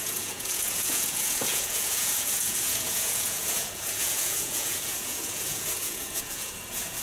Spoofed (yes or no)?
yes